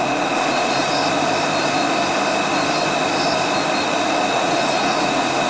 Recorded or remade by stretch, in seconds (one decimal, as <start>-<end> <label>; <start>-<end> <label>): 0.0-1.0 remade; 1.0-4.3 recorded; 4.3-5.5 remade